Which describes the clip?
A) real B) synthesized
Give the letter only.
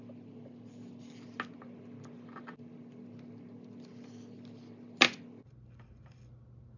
A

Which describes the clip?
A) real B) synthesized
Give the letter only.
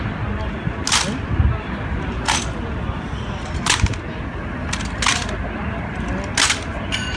A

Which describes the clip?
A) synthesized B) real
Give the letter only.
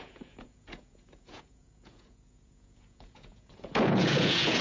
A